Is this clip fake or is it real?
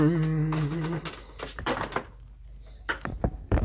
real